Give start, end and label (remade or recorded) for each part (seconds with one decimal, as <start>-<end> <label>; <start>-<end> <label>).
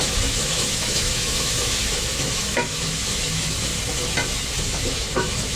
0.0-3.7 remade; 3.7-4.6 recorded; 4.6-5.6 remade